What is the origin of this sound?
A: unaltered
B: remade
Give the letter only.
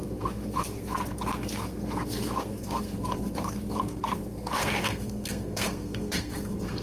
B